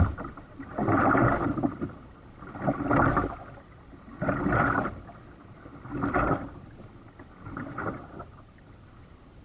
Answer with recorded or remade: recorded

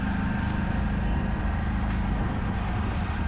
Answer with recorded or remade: recorded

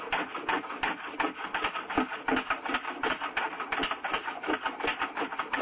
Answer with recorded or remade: recorded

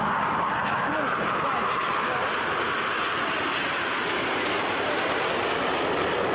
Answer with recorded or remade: recorded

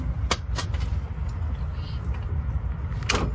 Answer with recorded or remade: recorded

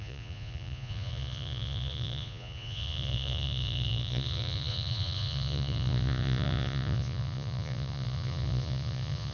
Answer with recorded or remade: remade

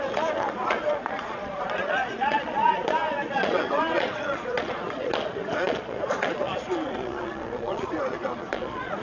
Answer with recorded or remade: remade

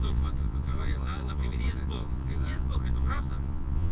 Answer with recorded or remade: remade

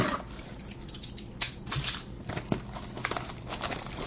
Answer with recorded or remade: recorded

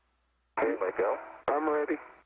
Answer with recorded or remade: recorded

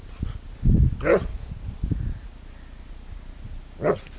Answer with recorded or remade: recorded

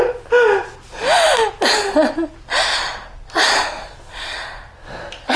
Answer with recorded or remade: recorded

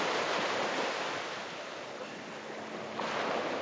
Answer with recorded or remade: recorded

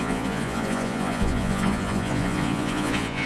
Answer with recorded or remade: remade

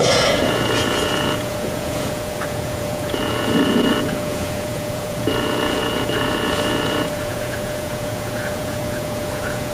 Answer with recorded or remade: remade